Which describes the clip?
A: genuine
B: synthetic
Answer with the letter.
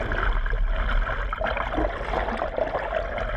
A